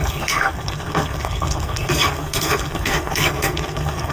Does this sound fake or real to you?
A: fake